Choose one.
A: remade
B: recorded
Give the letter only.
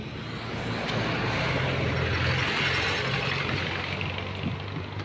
B